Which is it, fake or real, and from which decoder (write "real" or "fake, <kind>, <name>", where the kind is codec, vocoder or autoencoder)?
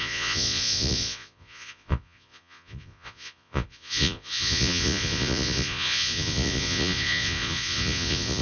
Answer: fake, vocoder, Vocos